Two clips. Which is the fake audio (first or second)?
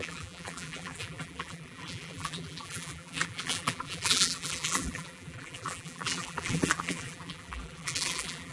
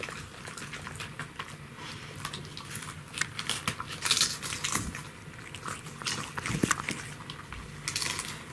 first